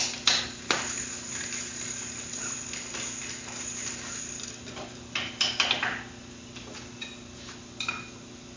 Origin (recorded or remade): recorded